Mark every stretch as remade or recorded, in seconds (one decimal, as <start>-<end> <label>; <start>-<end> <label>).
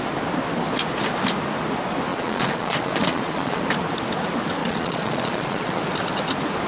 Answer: 0.0-2.1 recorded; 2.1-3.6 remade; 3.6-4.6 recorded; 4.6-5.8 remade; 5.8-6.7 recorded